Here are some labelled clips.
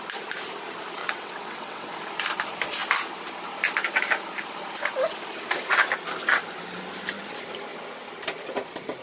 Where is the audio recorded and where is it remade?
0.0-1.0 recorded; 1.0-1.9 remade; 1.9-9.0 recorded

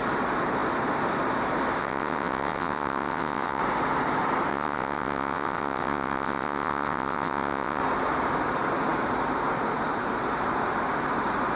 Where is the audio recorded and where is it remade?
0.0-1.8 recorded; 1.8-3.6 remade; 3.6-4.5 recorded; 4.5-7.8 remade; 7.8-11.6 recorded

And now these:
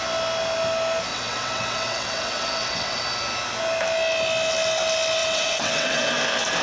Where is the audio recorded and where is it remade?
0.0-1.1 recorded; 1.1-3.0 remade; 3.0-5.2 recorded; 5.2-6.0 remade; 6.0-6.6 recorded

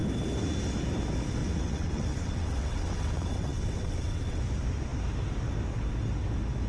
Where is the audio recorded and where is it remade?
0.0-1.4 recorded; 1.4-4.4 remade; 4.4-6.7 recorded

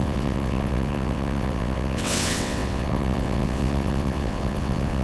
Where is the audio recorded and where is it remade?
0.0-5.0 remade

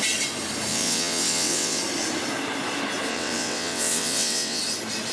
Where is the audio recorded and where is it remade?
0.0-0.7 recorded; 0.7-1.8 remade; 1.8-3.1 recorded; 3.1-4.6 remade; 4.6-5.1 recorded

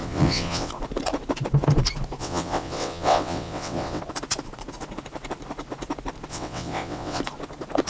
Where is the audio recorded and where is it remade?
0.0-0.7 remade; 0.7-2.2 recorded; 2.2-4.0 remade; 4.0-6.3 recorded; 6.3-7.2 remade; 7.2-7.9 recorded